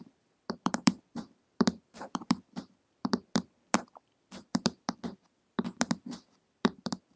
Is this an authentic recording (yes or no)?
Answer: no